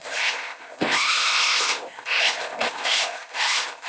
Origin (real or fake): fake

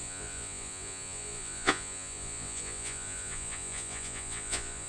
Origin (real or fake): fake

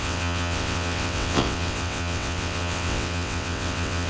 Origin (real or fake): fake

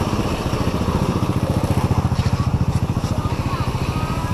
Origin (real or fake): real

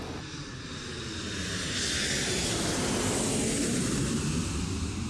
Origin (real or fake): real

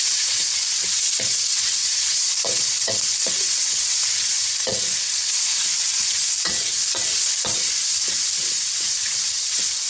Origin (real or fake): fake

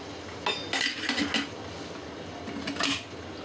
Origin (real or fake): real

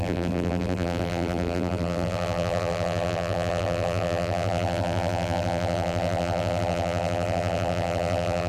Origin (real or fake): fake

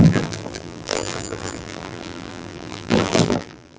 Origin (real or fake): fake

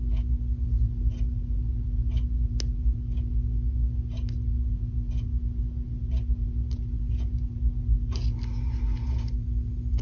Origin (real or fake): real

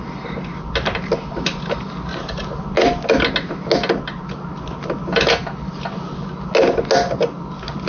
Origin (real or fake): real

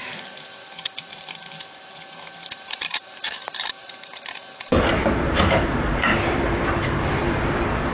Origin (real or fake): fake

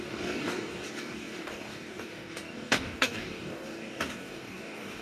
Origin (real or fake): fake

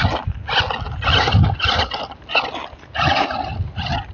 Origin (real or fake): real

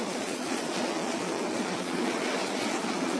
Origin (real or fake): fake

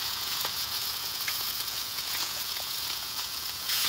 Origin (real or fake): fake